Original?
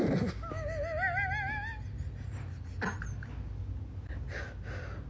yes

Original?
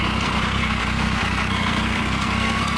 no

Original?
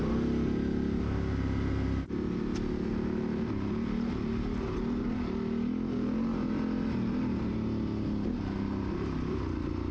yes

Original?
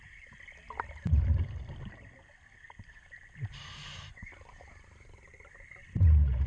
yes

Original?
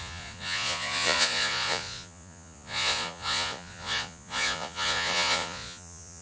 no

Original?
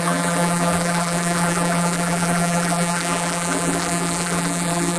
no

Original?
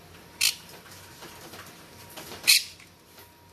no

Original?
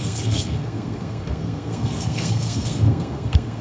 no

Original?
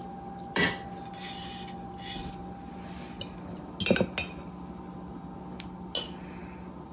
yes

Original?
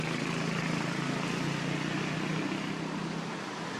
yes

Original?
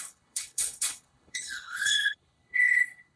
no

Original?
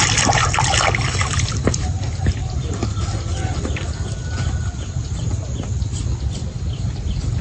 yes